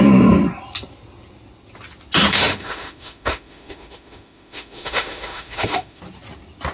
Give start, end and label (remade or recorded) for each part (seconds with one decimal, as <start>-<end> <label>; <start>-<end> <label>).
0.0-2.3 recorded; 2.3-6.0 remade; 6.0-6.7 recorded